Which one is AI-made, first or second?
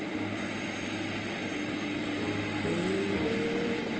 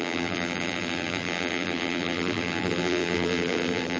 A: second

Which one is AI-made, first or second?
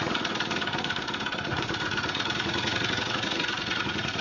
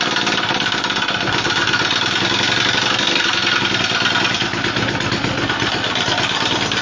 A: first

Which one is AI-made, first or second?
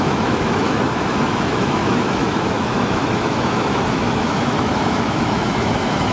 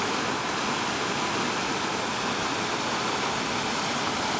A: first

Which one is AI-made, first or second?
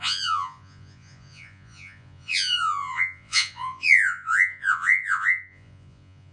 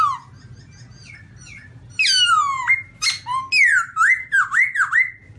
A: first